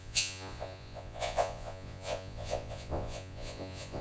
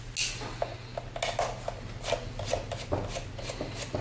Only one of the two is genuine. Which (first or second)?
second